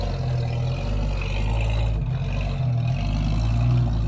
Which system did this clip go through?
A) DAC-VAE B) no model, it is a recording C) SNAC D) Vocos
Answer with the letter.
B